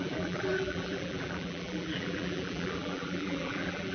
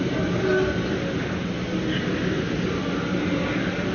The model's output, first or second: first